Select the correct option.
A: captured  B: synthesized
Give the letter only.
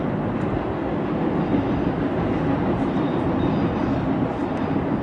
A